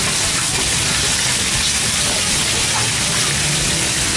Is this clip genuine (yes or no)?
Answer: yes